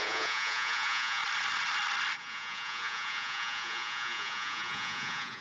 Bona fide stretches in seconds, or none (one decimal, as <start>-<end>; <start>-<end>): 1.2-2.2